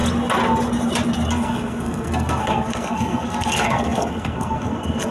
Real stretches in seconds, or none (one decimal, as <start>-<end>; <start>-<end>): 0.0-1.3